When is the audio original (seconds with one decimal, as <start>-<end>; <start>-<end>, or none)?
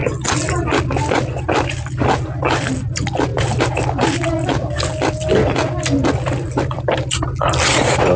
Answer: 0.0-8.2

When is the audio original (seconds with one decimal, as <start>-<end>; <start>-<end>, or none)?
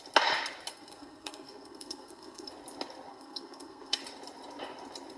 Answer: 0.0-0.7; 2.5-3.1; 4.0-5.2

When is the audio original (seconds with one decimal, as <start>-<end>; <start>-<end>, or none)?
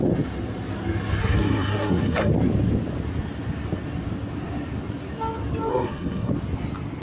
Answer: 0.0-1.2; 2.3-5.7; 6.3-7.0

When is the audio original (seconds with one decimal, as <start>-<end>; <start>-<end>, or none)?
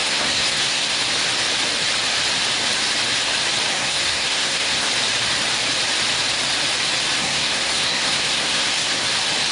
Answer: 1.0-3.7; 4.9-7.2; 9.1-9.5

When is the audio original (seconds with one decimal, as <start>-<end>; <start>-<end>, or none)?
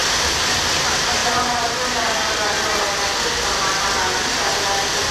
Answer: 0.0-5.1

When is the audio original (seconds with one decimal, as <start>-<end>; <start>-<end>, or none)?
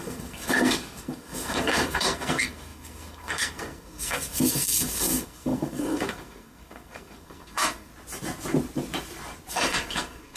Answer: 7.9-9.5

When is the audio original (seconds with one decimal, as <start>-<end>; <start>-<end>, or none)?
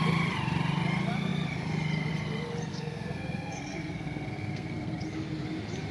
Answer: 0.0-2.7; 5.0-5.9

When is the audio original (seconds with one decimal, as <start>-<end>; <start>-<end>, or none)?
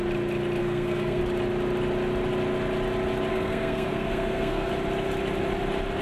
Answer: 0.0-0.6; 1.2-3.3; 4.7-6.0